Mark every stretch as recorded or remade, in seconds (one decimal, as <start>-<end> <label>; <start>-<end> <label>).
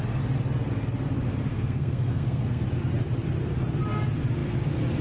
0.0-1.5 recorded; 1.5-2.6 remade; 2.6-5.0 recorded